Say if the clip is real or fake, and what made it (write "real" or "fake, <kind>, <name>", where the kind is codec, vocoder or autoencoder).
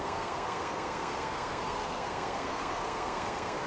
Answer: fake, codec, SNAC